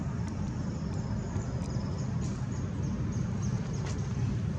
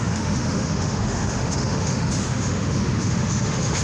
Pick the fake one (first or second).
second